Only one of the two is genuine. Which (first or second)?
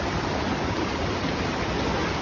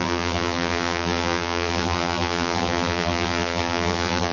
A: first